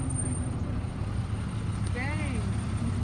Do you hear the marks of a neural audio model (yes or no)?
yes